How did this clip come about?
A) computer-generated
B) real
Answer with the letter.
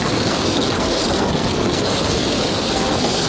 A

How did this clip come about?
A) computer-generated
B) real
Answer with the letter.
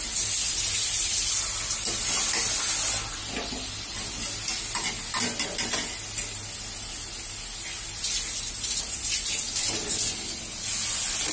B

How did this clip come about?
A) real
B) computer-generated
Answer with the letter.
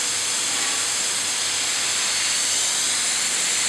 A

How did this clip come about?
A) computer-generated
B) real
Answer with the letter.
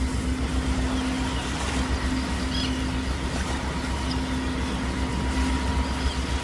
B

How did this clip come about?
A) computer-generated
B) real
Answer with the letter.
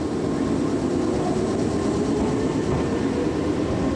B